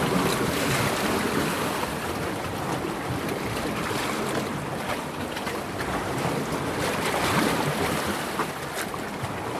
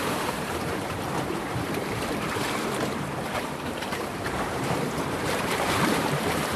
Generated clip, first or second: second